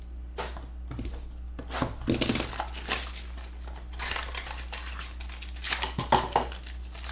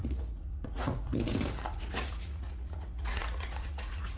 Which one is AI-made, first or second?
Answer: second